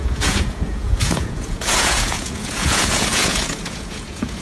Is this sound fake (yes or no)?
yes